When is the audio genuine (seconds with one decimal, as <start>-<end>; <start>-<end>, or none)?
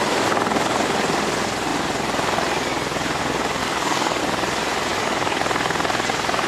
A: 0.0-3.6; 4.2-4.9; 5.4-6.5